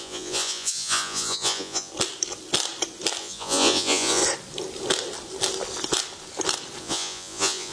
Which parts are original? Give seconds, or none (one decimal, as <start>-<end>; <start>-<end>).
1.9-3.2; 4.2-6.8

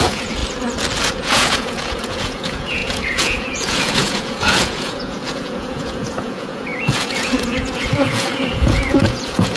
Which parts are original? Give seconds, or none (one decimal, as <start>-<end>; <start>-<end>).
0.4-1.1

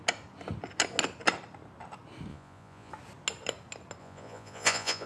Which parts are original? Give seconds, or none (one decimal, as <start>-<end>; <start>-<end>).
0.0-2.3; 2.9-4.0

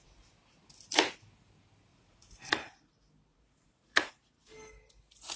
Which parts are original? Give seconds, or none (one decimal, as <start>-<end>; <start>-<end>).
0.0-1.9; 2.9-3.3; 4.1-5.4